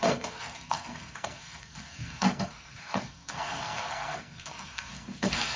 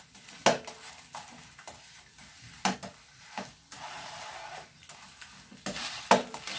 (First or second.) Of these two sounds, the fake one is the first